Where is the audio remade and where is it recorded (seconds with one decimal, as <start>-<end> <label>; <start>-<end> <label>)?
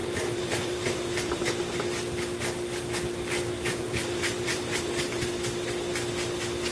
0.0-1.5 remade; 1.5-3.7 recorded; 3.7-5.3 remade; 5.3-6.7 recorded